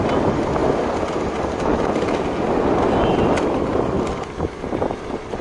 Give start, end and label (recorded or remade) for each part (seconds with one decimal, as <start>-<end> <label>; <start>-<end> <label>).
0.0-5.4 recorded